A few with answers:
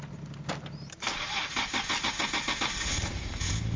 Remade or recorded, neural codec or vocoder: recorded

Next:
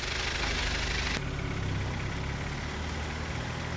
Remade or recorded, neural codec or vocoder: recorded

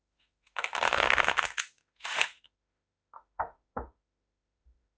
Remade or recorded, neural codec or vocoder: remade, autoencoder, DAC-VAE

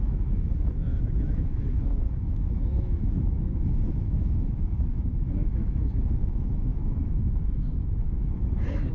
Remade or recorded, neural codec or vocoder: remade, autoencoder, DAC-VAE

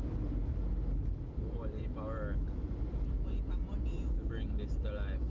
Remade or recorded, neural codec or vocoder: recorded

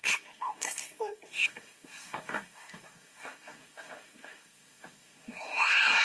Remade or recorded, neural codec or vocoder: remade, codec, SNAC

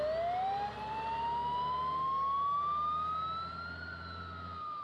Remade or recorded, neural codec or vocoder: recorded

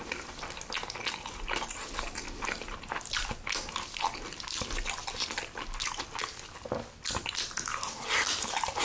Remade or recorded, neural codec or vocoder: recorded